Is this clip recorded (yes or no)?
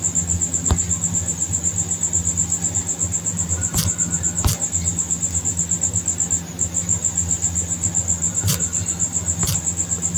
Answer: yes